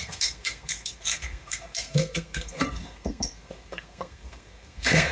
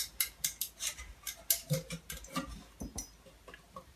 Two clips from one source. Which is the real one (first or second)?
second